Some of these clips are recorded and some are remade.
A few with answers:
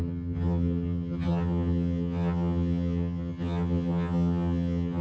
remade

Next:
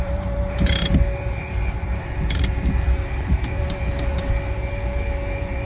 remade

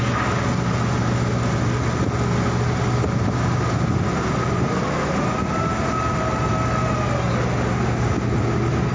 recorded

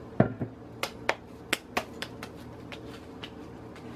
recorded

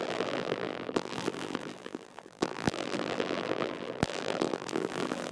remade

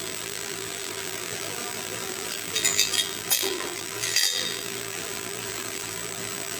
remade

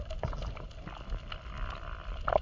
recorded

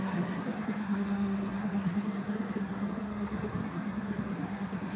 remade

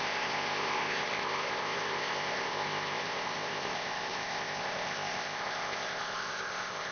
remade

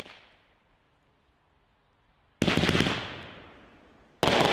recorded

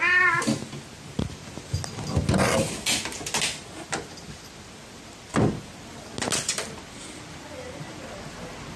recorded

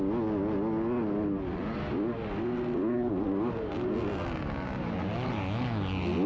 recorded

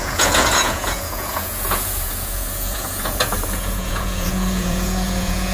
remade